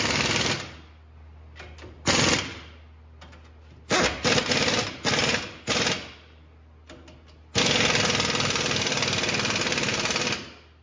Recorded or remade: recorded